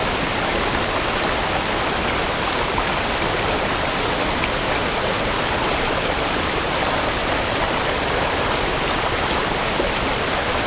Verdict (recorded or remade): recorded